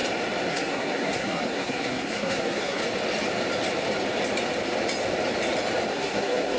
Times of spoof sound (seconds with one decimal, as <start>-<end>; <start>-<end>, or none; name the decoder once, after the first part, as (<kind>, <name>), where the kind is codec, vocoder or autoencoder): 0.5-2.8 (codec, SNAC); 5.9-6.6